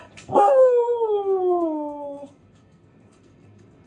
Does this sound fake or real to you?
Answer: fake